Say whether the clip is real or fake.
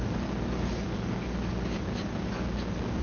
real